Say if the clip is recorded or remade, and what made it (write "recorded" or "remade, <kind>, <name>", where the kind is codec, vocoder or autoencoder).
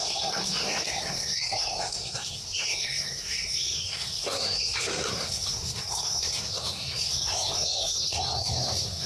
remade, codec, SNAC